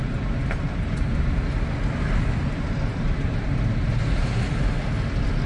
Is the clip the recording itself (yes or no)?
yes